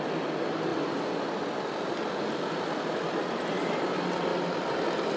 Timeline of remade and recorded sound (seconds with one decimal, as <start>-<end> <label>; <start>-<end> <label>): 0.0-0.7 recorded; 0.7-3.8 remade; 3.8-5.2 recorded